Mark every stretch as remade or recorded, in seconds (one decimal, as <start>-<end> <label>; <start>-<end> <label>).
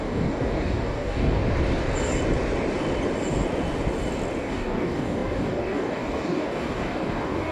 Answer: 0.0-1.4 remade; 1.4-4.4 recorded; 4.4-7.5 remade